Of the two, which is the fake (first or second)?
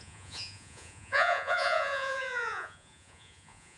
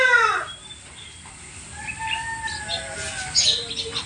first